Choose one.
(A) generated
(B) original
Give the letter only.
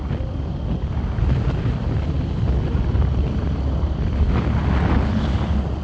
B